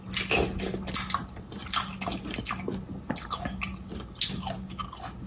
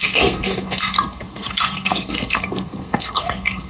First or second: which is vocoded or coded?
second